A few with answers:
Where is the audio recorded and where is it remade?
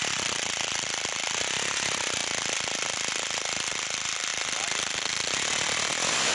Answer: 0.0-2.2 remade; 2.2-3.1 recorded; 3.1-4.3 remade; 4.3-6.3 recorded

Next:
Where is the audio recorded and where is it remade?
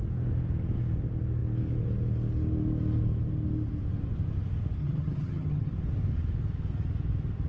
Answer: 0.0-4.8 recorded; 4.8-5.7 remade; 5.7-7.5 recorded